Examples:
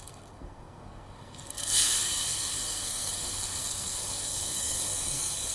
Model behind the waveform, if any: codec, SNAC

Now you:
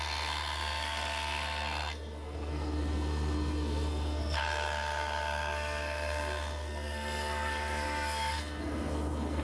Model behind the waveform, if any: codec, SNAC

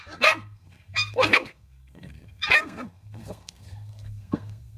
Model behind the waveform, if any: codec, SNAC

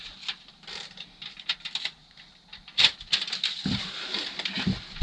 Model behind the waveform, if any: none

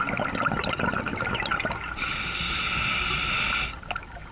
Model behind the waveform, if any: none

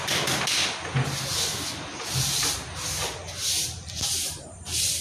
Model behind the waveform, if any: none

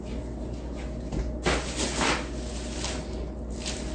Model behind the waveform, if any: none